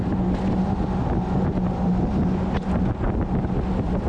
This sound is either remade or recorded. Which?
recorded